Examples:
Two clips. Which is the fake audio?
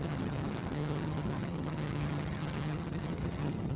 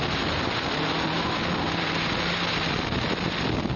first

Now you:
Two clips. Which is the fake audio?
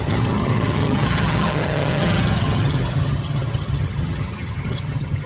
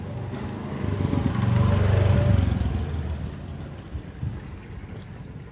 first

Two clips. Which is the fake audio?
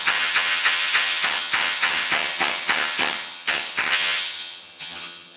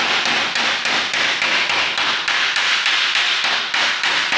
first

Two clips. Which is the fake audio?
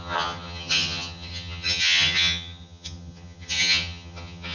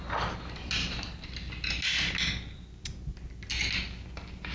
first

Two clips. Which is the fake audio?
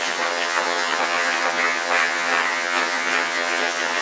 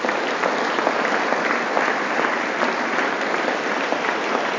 first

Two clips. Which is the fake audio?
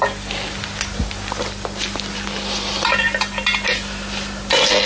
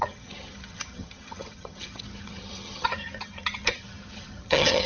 second